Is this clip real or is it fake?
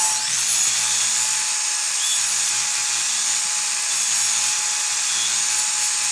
real